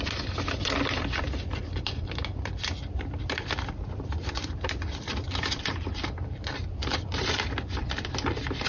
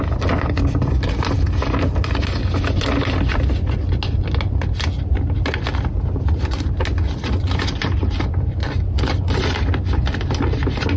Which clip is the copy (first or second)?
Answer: first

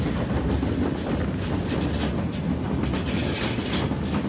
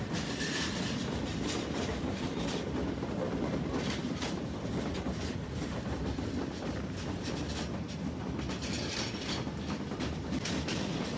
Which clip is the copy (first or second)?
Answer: second